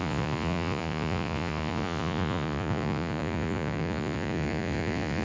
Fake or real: fake